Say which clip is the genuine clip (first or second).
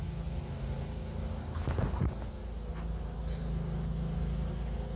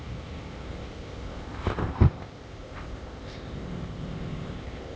first